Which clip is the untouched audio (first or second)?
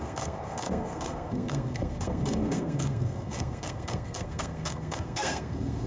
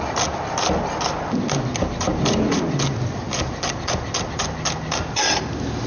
second